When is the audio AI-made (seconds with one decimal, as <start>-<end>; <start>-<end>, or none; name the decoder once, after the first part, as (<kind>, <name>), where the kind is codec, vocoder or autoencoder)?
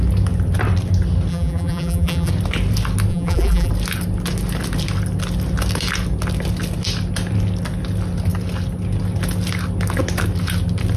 1.3-2.3 (vocoder, BigVGAN v2); 3.1-3.7